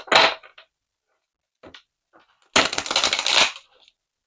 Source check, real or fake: real